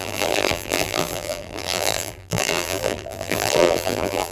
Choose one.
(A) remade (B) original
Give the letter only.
A